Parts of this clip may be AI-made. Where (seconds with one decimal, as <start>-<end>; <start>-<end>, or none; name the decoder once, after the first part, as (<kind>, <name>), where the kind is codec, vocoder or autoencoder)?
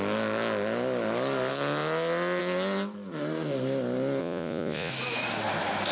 4.2-4.9 (vocoder, Vocos)